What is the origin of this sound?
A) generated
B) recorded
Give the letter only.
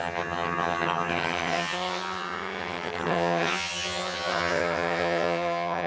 A